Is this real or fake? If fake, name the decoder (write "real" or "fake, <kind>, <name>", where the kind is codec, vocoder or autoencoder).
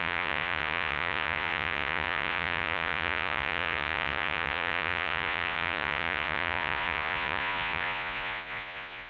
fake, vocoder, Vocos